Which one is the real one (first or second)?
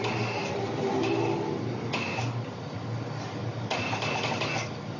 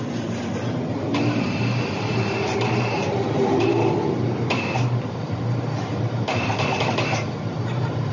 first